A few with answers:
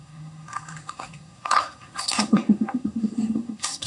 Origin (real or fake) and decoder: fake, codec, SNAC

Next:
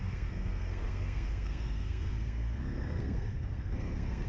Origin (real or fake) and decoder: fake, codec, SNAC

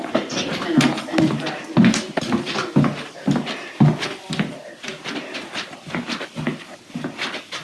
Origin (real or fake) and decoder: real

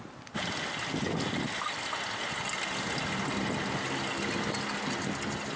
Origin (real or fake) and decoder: real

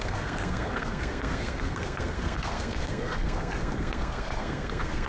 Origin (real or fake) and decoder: fake, codec, SNAC